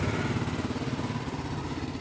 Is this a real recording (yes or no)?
yes